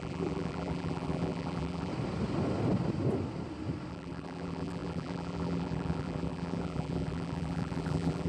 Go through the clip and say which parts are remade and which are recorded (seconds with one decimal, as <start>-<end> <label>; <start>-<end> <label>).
0.0-1.9 remade; 1.9-3.9 recorded; 3.9-8.3 remade